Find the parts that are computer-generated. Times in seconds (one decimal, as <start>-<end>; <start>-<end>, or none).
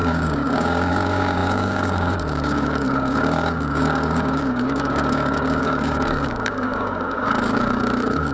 0.0-8.3